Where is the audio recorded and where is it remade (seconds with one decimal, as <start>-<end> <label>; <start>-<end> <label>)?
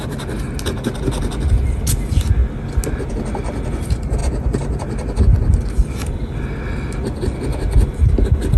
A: 0.0-8.6 recorded